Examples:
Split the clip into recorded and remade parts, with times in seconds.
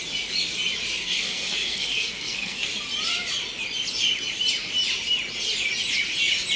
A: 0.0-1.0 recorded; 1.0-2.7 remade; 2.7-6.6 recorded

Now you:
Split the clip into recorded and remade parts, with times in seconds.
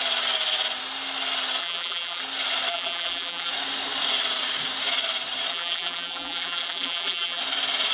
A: 0.0-1.6 recorded; 1.6-2.2 remade; 2.2-2.7 recorded; 2.7-3.5 remade; 3.5-5.5 recorded; 5.5-7.4 remade; 7.4-7.9 recorded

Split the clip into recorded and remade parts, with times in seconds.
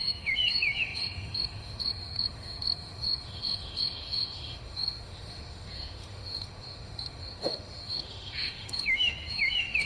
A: 0.0-9.9 remade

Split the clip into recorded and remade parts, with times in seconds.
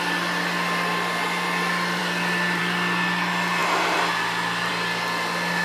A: 0.0-5.6 recorded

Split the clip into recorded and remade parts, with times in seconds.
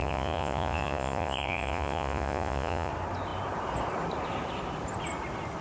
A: 0.0-2.9 remade; 2.9-5.6 recorded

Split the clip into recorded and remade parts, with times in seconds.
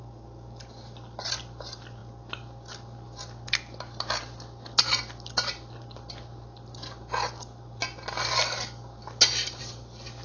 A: 0.0-10.2 recorded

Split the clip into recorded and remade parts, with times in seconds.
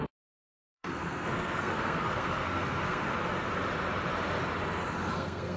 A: 0.0-3.1 remade; 3.1-5.1 recorded; 5.1-5.6 remade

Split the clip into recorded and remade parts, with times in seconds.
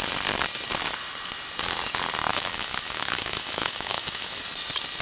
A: 0.0-2.3 recorded; 2.3-4.4 remade; 4.4-5.0 recorded